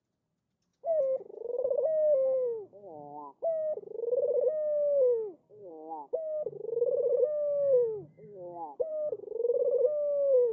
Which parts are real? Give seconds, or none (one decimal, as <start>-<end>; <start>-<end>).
0.0-10.5

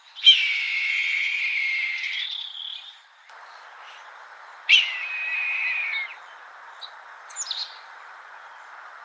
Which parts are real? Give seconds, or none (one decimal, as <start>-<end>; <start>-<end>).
0.0-0.9; 1.4-9.0

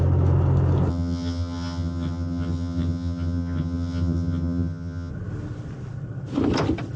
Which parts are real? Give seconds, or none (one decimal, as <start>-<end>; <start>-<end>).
0.0-0.9; 5.1-7.0

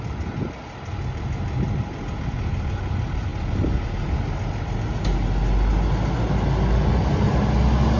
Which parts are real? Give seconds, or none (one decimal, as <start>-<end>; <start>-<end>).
0.0-8.0

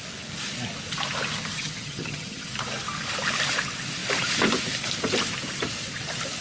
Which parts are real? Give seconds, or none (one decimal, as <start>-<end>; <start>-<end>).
0.0-1.5; 2.5-6.4

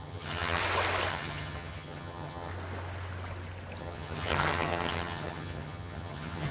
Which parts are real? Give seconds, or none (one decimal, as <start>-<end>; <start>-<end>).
0.6-1.1; 2.5-3.8

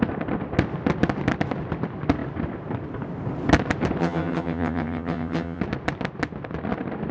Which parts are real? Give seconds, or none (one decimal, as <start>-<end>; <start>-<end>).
0.0-4.0; 5.6-7.1